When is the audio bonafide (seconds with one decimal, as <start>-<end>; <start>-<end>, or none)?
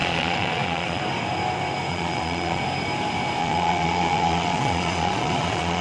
1.0-1.9; 2.6-3.4